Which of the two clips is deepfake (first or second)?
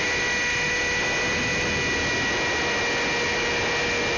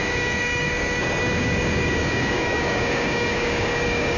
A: second